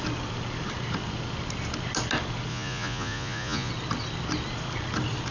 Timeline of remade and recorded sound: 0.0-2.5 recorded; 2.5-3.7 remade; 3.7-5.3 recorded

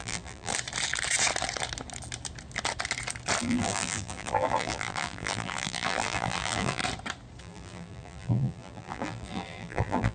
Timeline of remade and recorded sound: 0.0-0.5 remade; 0.5-3.4 recorded; 3.4-6.8 remade; 6.8-7.4 recorded; 7.4-10.1 remade

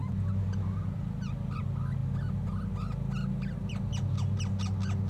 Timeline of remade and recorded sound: 0.0-5.1 recorded

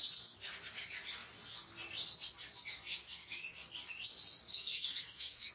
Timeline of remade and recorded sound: 0.0-2.8 recorded; 2.8-3.7 remade; 3.7-4.5 recorded; 4.5-5.5 remade